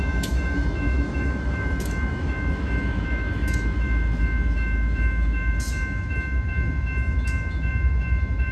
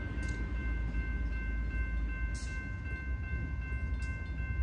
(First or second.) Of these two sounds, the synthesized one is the first